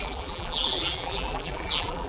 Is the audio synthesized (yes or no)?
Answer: yes